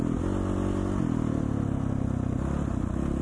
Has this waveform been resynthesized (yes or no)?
no